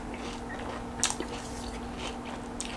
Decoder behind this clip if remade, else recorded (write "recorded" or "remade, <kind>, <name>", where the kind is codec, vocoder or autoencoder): recorded